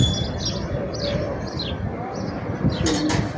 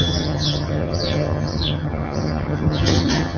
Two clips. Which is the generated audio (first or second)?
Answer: second